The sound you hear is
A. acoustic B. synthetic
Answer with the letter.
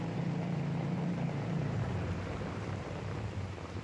B